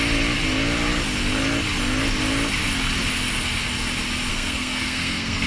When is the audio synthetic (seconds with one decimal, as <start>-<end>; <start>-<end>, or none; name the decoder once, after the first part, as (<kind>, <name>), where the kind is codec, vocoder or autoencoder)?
4.3-5.5 (codec, SNAC)